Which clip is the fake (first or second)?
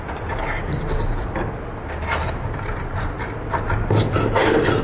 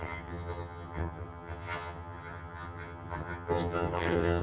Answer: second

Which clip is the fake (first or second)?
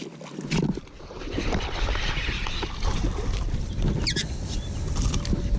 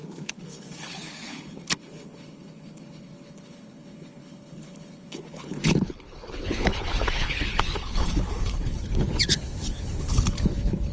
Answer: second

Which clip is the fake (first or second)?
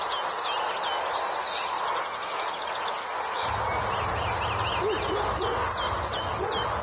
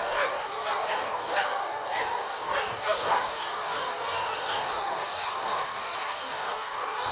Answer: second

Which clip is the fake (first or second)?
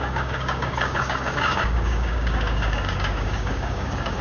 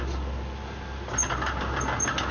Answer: first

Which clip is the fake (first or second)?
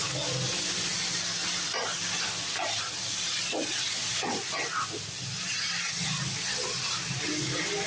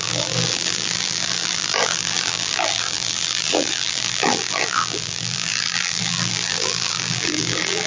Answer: second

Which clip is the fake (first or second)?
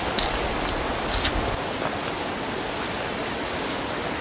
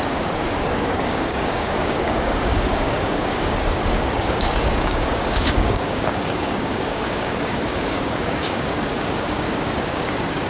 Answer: second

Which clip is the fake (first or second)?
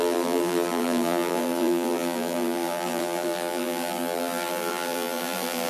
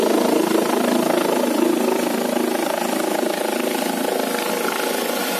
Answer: first